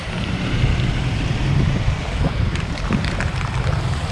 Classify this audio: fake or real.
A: fake